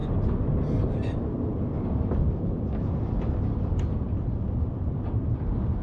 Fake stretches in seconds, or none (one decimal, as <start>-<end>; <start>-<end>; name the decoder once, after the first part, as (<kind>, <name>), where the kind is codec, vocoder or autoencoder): none